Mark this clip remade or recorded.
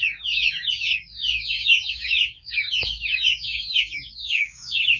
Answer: remade